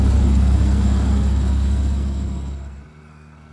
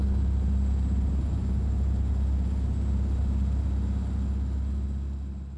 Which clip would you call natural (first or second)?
second